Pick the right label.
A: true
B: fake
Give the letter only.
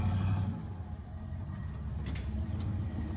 A